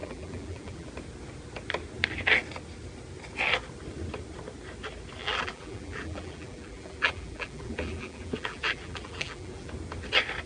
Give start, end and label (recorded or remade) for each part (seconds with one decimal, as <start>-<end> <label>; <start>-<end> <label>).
0.0-0.9 remade; 0.9-5.2 recorded; 5.2-9.7 remade; 9.7-10.5 recorded